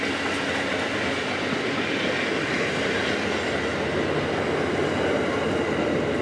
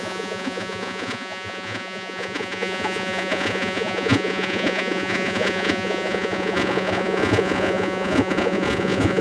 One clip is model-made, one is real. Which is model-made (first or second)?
second